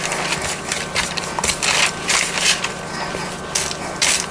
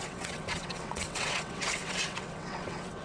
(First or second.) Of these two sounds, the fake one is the second